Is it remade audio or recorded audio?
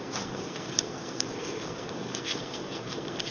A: remade